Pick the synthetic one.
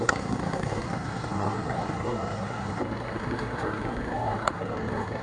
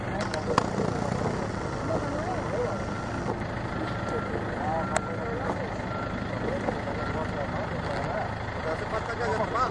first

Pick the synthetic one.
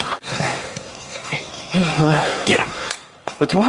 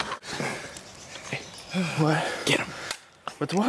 first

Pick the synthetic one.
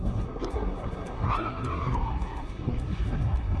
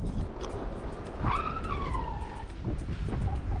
first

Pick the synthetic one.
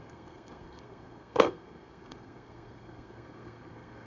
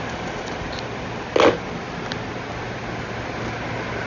first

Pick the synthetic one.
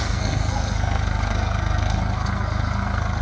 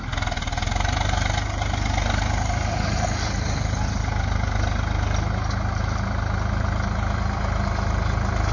first